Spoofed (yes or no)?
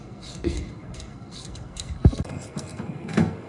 yes